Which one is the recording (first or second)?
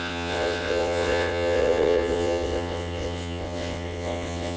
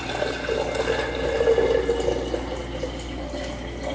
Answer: second